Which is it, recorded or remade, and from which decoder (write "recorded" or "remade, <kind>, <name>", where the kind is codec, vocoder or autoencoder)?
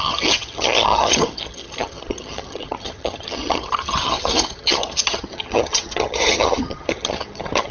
remade, vocoder, HiFi-GAN